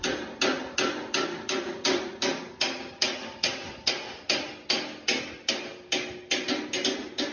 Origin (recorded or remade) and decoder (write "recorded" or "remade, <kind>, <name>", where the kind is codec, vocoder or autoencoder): recorded